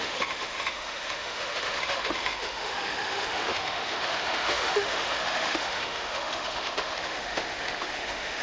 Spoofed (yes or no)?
yes